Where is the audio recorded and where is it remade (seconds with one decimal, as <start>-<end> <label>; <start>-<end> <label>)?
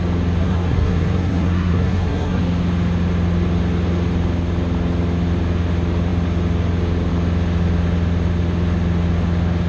0.0-0.4 recorded; 0.4-2.4 remade; 2.4-9.7 recorded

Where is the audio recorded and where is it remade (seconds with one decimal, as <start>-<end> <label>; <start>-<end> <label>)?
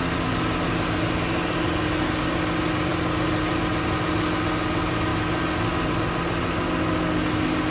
0.0-7.7 recorded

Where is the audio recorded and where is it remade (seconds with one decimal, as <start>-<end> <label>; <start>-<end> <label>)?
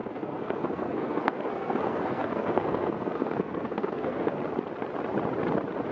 0.0-4.4 remade; 4.4-5.9 recorded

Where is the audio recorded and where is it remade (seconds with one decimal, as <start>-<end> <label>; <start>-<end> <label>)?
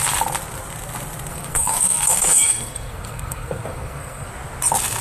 0.0-1.3 recorded; 1.3-4.3 remade; 4.3-5.0 recorded